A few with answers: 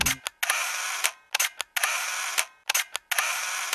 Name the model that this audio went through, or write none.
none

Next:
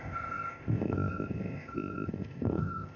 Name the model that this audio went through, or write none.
codec, ZipCodec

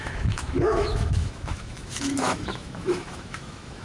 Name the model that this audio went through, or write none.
autoencoder, DAC-VAE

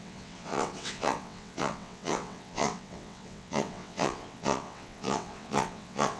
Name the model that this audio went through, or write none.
vocoder, WaveNeXt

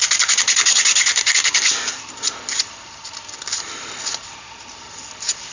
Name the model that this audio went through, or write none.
none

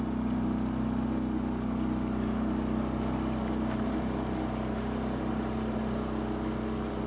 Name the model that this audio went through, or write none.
none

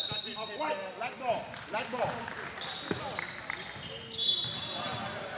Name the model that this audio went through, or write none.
none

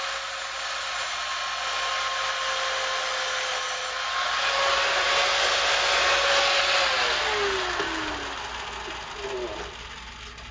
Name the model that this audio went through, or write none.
none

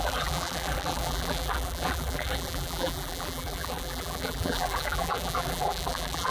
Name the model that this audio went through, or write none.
vocoder, BigVGAN v2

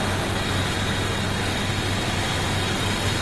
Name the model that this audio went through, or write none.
none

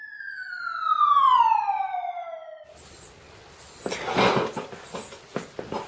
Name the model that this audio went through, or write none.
none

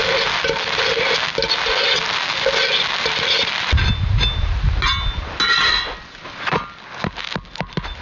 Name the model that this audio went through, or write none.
none